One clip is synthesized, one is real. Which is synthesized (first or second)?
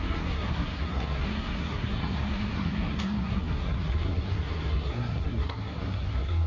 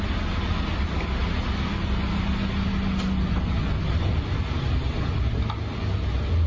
first